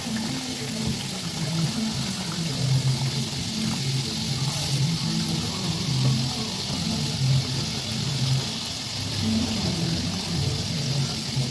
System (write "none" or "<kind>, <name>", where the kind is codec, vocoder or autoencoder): none